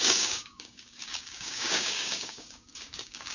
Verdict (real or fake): fake